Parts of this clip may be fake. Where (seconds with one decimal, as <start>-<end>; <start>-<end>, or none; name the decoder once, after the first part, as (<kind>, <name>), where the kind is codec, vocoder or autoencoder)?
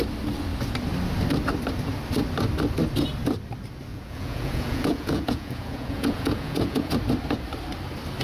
3.9-6.9 (vocoder, Vocos)